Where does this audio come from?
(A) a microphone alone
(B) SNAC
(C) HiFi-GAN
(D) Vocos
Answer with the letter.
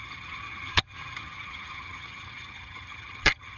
C